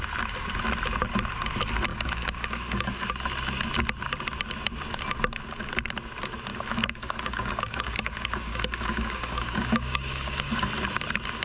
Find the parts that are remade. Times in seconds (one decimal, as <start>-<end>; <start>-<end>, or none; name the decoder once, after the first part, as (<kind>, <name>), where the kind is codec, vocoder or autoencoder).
1.9-3.1 (codec, DAC); 6.5-10.6

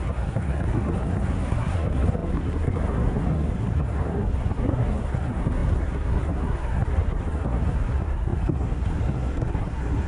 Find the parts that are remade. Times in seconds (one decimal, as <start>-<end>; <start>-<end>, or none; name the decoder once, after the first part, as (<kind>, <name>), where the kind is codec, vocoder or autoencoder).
0.0-10.1 (codec, SNAC)

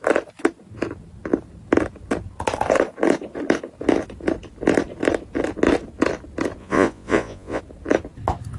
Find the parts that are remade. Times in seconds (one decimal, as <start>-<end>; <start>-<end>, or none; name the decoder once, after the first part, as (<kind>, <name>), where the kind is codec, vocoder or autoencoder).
6.6-7.6 (vocoder, Vocos)

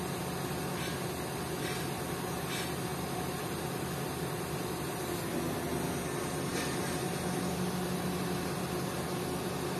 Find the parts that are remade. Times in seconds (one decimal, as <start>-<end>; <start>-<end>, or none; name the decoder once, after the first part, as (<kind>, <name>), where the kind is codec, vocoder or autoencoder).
none